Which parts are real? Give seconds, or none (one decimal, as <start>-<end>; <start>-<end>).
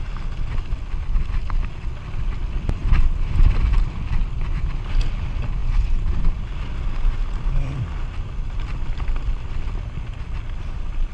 0.0-11.1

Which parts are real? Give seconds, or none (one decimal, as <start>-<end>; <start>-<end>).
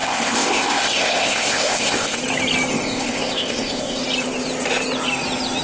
2.2-2.7; 4.0-5.6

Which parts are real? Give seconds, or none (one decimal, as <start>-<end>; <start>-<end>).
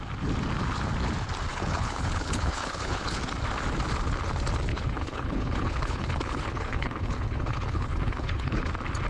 0.0-1.5; 3.2-4.7; 8.6-9.1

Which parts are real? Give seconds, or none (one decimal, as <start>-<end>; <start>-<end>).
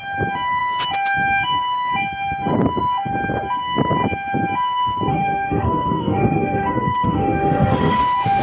0.0-5.1; 8.0-8.4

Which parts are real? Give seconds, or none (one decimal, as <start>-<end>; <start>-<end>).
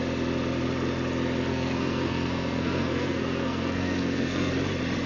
0.0-1.5; 4.5-5.1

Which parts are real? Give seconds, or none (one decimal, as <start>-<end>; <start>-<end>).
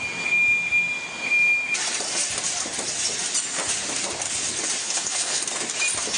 0.0-4.8; 5.4-6.2